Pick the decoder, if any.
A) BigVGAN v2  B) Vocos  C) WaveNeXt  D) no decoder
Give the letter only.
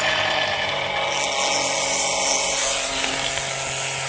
D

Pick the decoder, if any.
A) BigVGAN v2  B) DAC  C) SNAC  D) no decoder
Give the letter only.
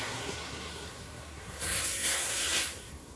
C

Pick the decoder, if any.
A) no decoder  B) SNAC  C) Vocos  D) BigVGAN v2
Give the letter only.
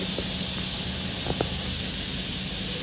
A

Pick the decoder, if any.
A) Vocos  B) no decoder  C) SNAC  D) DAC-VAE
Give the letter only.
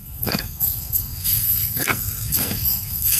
C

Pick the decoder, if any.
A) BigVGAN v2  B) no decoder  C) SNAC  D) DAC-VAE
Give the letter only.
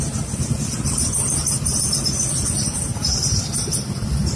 A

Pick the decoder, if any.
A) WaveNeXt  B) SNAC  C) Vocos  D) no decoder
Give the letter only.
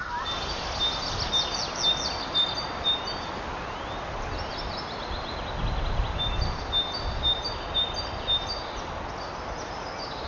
D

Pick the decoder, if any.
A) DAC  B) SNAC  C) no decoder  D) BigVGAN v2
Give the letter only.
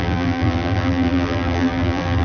D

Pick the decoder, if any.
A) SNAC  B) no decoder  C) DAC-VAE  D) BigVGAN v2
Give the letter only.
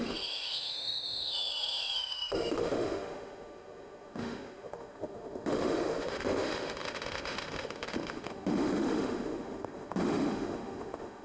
C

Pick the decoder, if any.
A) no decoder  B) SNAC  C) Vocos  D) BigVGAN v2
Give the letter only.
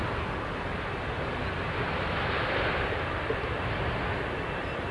A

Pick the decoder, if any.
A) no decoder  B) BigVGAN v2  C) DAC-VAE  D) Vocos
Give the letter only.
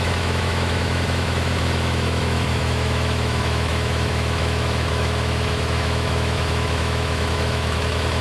C